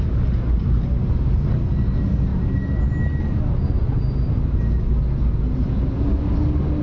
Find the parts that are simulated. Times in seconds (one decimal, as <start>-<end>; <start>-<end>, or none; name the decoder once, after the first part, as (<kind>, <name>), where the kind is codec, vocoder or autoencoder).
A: none

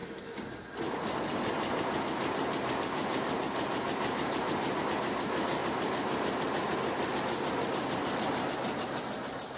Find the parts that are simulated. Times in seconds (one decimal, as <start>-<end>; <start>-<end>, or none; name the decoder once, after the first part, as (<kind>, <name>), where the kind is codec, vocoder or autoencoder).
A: none

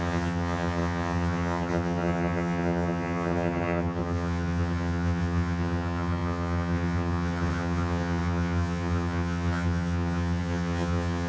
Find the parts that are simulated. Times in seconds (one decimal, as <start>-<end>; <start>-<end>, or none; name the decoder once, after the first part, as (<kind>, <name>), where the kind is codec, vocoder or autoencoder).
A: 0.0-11.3 (vocoder, HiFi-GAN)

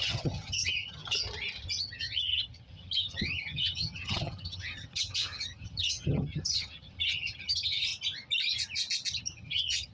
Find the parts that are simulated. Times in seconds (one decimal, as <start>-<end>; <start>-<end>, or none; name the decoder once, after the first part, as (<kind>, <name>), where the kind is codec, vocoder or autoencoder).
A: 0.0-1.2 (vocoder, HiFi-GAN); 1.8-7.9; 9.2-9.9